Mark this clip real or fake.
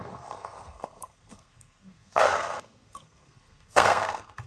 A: fake